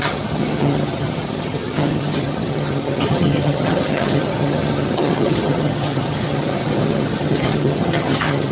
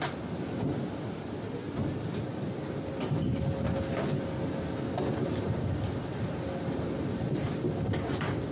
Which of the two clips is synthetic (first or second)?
first